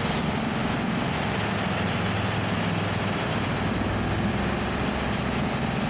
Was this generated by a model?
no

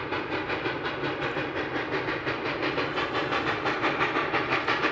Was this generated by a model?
no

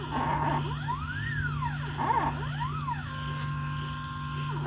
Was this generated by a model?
no